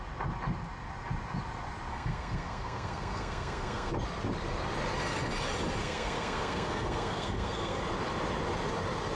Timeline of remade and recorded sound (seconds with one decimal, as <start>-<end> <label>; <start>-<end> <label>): 0.0-1.9 recorded; 1.9-3.9 remade; 3.9-5.8 recorded; 5.8-7.8 remade; 7.8-9.2 recorded